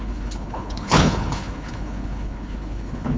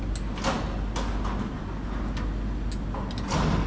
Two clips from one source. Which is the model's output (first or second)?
first